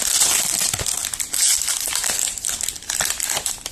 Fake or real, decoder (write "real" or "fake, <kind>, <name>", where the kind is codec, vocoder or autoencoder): real